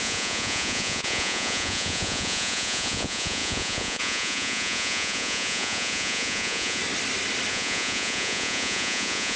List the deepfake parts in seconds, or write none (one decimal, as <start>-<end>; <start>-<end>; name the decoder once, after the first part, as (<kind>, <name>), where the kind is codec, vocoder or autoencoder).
0.0-6.8 (vocoder, Vocos); 7.5-9.4